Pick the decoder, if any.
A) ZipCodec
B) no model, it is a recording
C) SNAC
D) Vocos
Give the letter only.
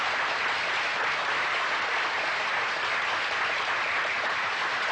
B